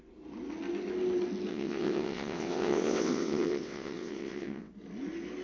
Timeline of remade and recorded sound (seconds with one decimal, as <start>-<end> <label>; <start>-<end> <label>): 0.0-1.5 recorded; 1.5-4.7 remade; 4.7-5.4 recorded